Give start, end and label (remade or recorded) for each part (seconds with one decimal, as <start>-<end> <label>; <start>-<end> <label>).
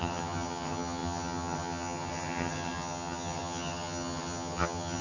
0.0-5.0 remade